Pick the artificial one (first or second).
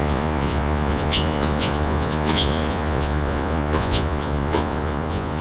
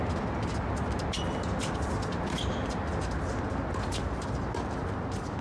first